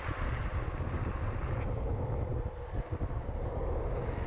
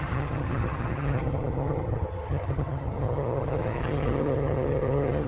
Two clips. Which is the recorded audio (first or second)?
first